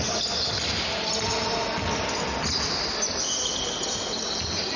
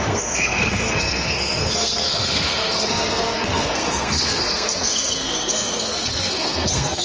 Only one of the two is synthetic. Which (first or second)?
second